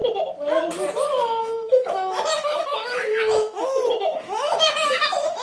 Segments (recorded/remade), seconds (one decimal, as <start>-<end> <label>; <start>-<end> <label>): 0.0-1.4 recorded; 1.4-5.4 remade